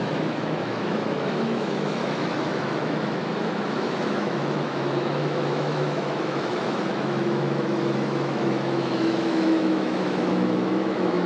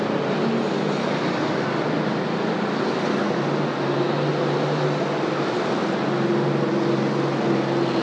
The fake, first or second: first